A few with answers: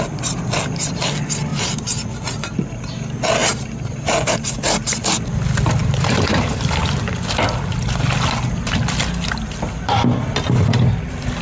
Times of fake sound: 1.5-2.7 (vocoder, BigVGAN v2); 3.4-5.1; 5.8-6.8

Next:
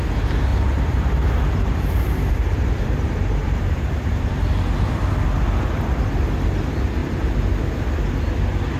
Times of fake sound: 0.5-4.3 (vocoder, BigVGAN v2)

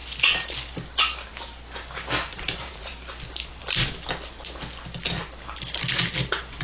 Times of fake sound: 2.3-2.9 (vocoder, BigVGAN v2)

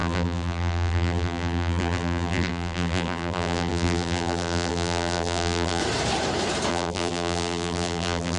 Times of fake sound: 0.0-5.8 (vocoder, BigVGAN v2); 6.7-8.4